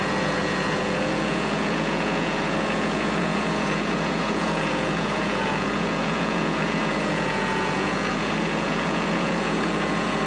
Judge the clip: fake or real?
fake